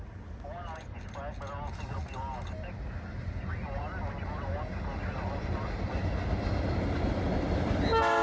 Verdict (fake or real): real